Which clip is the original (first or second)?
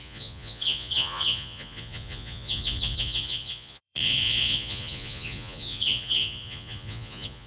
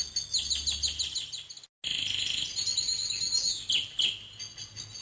second